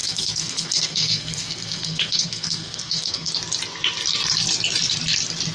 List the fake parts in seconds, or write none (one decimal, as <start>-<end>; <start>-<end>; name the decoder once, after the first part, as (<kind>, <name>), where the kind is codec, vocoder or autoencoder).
0.0-3.3 (codec, SNAC)